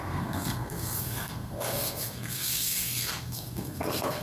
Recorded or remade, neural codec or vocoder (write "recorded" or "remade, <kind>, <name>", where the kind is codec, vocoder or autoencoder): remade, codec, SNAC